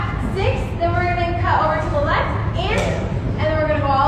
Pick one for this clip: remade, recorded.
recorded